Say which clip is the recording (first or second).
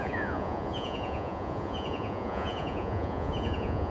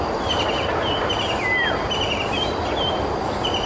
second